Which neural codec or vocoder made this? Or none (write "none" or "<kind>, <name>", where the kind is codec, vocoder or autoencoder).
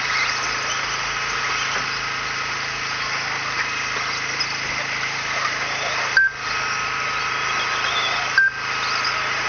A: none